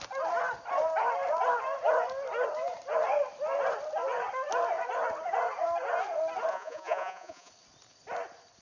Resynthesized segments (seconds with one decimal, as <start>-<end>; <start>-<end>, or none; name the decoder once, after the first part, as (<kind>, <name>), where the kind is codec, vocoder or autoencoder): 6.5-7.5 (vocoder, Vocos)

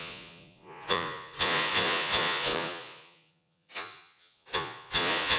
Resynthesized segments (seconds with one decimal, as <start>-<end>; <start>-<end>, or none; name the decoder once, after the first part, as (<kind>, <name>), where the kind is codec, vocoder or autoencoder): 0.0-5.4 (vocoder, Vocos)

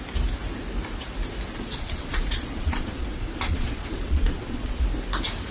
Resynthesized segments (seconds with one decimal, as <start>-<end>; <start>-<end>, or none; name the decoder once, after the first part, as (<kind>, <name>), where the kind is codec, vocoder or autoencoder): 1.5-4.8 (vocoder, Vocos)